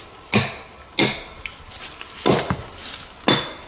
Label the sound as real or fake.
real